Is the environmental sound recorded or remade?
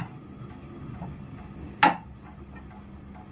recorded